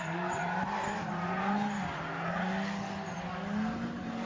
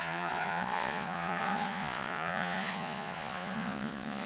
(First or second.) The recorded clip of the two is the first